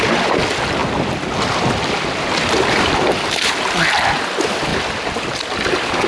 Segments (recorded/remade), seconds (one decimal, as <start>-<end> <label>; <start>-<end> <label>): 0.0-6.1 recorded